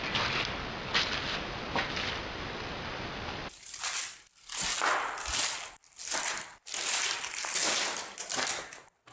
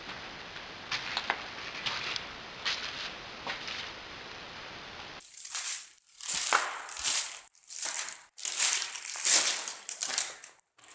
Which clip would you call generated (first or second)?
second